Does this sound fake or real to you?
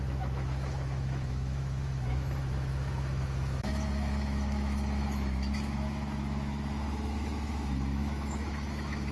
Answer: fake